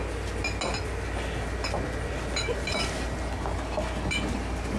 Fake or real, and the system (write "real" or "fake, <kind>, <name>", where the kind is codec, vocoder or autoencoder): real